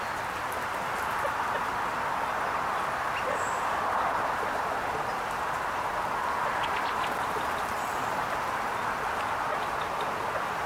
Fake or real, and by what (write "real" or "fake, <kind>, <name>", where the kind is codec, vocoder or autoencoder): real